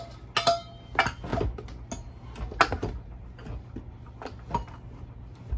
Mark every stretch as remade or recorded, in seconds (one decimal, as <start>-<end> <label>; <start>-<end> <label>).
0.0-5.6 recorded